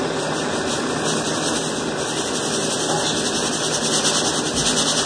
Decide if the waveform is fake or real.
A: real